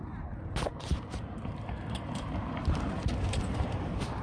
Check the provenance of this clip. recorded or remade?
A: remade